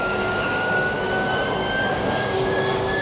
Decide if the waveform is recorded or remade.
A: remade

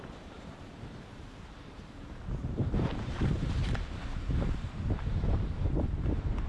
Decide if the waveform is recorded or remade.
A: remade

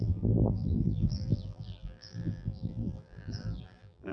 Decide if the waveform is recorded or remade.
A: remade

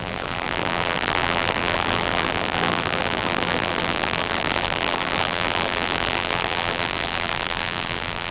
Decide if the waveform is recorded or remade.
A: remade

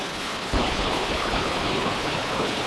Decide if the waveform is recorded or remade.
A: remade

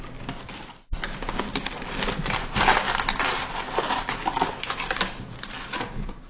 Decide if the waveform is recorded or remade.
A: recorded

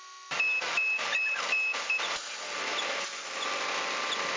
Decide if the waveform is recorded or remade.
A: recorded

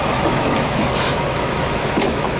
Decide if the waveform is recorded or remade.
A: remade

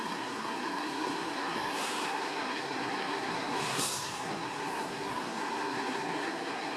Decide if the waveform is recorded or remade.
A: remade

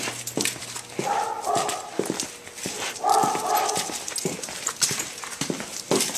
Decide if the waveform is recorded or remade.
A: recorded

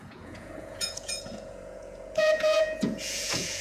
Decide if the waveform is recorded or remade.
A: remade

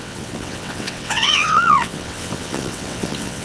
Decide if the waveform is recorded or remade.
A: remade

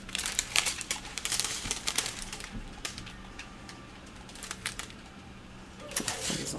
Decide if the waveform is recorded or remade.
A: remade